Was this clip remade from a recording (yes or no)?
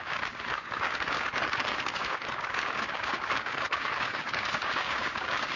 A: yes